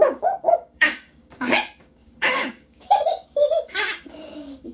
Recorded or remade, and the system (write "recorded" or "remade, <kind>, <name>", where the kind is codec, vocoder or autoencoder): remade, codec, DAC